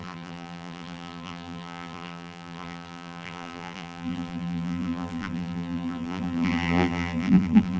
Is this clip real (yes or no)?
no